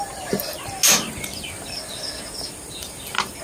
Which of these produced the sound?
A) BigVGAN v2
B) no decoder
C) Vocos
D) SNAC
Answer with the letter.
B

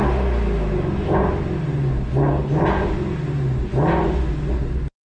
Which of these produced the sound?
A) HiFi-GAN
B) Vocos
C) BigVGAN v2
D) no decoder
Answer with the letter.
D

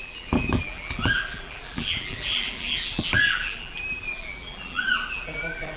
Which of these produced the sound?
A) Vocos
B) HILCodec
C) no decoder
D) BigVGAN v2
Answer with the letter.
D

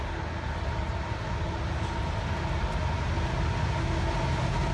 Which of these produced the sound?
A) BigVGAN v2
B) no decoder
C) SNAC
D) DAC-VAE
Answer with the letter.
B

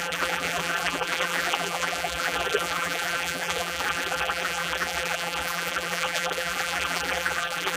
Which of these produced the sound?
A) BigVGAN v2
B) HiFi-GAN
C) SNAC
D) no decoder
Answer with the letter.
A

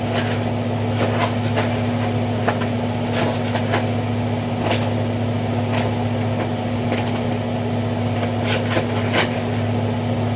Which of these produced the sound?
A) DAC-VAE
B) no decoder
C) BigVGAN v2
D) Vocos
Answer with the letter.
B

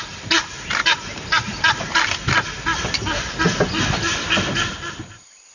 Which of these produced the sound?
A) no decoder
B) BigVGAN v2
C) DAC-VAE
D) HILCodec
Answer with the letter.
A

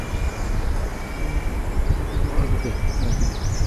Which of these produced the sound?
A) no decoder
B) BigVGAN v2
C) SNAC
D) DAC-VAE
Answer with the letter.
A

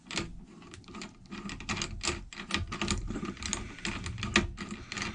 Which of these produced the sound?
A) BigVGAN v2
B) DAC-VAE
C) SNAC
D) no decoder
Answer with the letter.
D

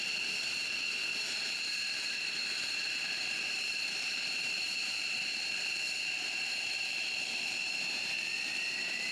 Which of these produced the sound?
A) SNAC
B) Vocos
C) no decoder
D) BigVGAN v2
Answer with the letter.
D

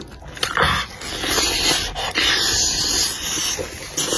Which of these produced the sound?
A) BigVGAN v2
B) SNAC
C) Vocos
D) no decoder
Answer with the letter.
D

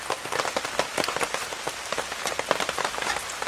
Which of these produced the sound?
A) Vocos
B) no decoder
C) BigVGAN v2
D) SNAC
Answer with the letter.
B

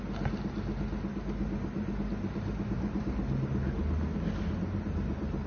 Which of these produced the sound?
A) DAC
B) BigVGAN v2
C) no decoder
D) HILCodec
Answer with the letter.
C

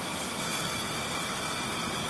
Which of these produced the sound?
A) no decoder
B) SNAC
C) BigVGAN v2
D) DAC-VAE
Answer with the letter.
A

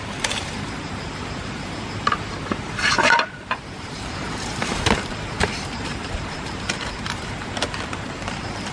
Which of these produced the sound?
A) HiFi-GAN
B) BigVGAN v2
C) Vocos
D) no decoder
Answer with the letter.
B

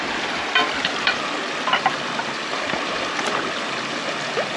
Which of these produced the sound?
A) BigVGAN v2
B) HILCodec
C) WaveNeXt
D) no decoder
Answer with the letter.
A